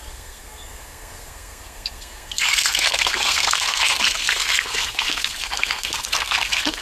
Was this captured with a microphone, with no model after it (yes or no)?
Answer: no